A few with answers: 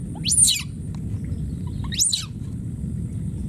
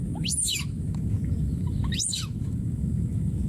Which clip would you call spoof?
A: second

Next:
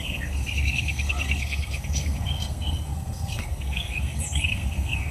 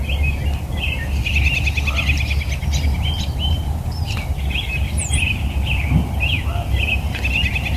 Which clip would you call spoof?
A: first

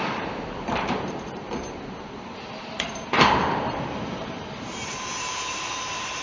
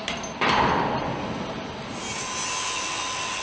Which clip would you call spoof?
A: first